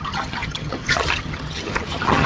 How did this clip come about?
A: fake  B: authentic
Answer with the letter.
A